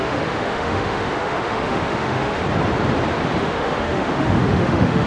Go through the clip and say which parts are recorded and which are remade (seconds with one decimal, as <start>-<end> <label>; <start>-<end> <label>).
0.0-2.4 remade; 2.4-3.4 recorded; 3.4-5.1 remade